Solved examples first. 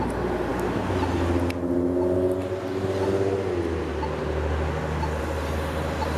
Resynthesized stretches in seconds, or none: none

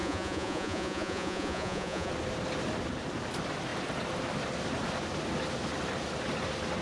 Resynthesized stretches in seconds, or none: 0.0-2.1 (vocoder, Vocos)

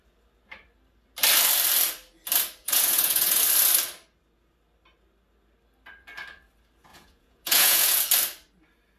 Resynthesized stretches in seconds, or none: 2.6-3.4 (vocoder, Vocos); 6.9-8.0

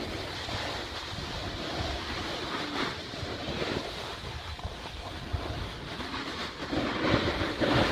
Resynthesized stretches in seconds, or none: 1.2-5.9 (vocoder, BigVGAN v2)

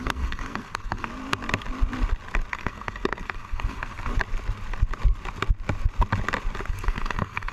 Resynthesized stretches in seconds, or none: 0.0-1.1 (codec, SNAC); 2.5-4.1; 6.7-7.5